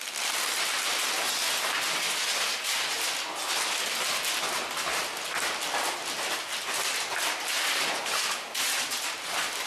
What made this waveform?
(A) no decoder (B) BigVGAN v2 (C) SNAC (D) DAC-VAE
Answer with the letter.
A